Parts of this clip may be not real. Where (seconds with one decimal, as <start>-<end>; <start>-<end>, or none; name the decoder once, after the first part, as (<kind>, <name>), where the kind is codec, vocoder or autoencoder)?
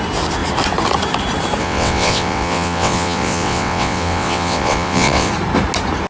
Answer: 1.6-5.3 (vocoder, WaveNeXt)